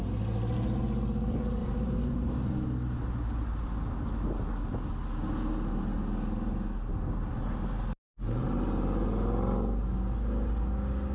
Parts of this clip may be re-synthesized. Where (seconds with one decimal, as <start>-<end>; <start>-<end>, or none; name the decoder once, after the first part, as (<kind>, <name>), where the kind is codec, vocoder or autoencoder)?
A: 1.6-2.3 (vocoder, BigVGAN v2)